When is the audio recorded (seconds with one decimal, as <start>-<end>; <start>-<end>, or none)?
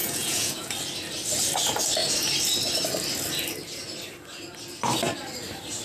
0.7-5.8